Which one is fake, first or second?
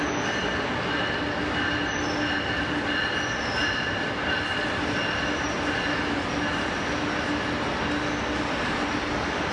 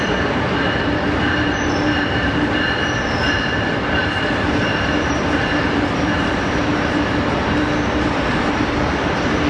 second